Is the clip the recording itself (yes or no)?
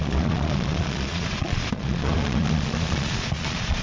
no